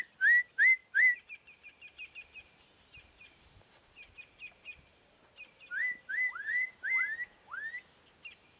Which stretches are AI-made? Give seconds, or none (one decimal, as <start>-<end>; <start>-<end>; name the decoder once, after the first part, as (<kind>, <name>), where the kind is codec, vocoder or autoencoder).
0.8-5.3 (vocoder, BigVGAN v2); 5.8-7.5